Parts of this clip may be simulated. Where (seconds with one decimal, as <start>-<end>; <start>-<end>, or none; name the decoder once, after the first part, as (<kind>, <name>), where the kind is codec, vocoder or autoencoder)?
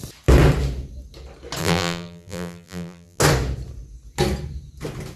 1.6-3.2 (vocoder, BigVGAN v2)